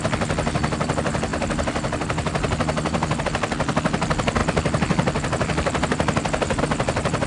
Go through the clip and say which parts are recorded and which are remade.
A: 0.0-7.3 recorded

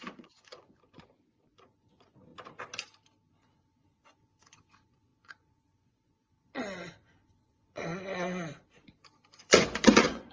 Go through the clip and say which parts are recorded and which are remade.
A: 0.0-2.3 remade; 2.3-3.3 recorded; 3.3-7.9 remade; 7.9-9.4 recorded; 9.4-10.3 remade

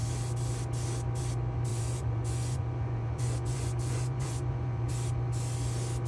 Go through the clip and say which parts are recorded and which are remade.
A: 0.0-1.7 recorded; 1.7-4.9 remade; 4.9-6.1 recorded

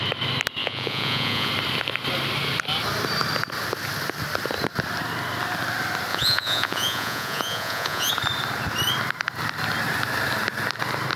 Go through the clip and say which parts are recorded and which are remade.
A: 0.0-0.6 recorded; 0.6-1.5 remade; 1.5-6.1 recorded; 6.1-8.1 remade; 8.1-11.2 recorded

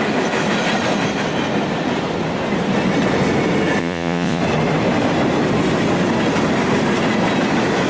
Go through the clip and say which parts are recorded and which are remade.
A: 0.0-3.8 recorded; 3.8-4.4 remade; 4.4-7.9 recorded

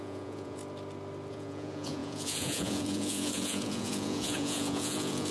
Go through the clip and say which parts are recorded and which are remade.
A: 0.0-0.6 remade; 0.6-1.3 recorded; 1.3-5.3 remade

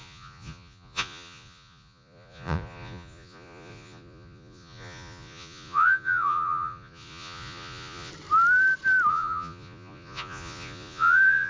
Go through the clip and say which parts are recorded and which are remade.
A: 0.0-8.1 remade; 8.1-9.1 recorded; 9.1-11.5 remade

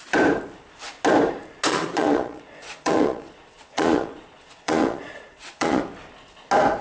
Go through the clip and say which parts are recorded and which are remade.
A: 0.0-1.7 recorded; 1.7-5.8 remade; 5.8-6.8 recorded